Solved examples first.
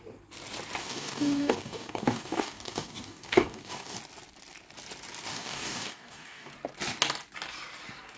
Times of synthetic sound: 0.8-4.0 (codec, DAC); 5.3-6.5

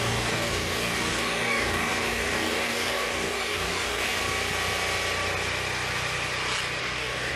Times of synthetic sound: 0.0-4.2 (codec, DAC); 6.8-7.4

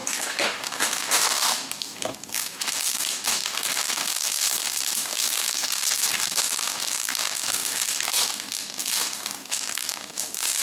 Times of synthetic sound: 0.0-10.6 (codec, DAC)

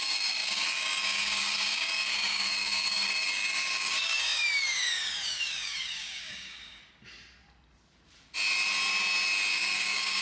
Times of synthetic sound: 0.0-6.8 (codec, DAC); 9.5-10.2